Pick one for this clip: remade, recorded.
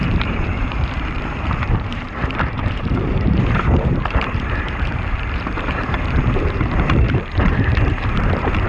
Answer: remade